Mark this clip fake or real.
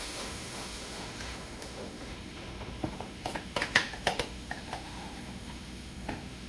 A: fake